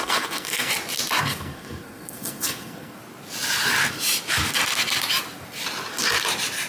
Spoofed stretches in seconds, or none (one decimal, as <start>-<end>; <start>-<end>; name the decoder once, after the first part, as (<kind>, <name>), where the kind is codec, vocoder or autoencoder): 0.0-0.7 (codec, SNAC); 1.2-3.0